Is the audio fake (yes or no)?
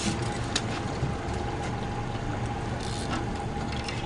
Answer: no